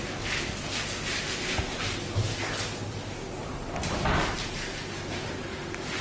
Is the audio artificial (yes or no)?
no